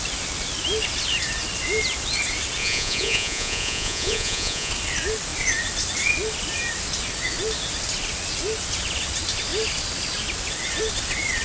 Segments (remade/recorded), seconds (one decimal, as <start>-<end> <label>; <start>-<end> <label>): 0.0-2.6 recorded; 2.6-4.7 remade; 4.7-11.4 recorded